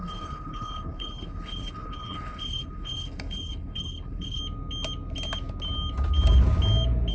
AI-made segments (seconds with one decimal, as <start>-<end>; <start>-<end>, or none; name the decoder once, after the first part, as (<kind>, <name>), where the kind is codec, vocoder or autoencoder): 0.0-4.4 (codec, HILCodec)

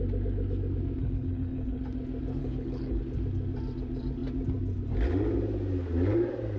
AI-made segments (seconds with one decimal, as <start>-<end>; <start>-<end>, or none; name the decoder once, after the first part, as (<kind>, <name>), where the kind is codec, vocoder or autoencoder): 1.0-1.8 (codec, HILCodec); 2.4-3.0

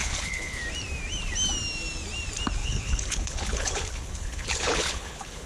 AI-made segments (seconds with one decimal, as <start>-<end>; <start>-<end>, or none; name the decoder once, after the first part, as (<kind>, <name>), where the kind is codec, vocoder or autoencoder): 0.0-0.6 (codec, HILCodec); 2.6-5.5

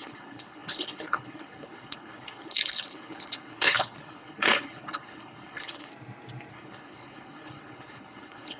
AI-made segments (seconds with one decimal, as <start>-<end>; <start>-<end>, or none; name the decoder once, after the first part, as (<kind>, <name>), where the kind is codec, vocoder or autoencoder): 0.0-5.9 (codec, HILCodec); 6.5-8.6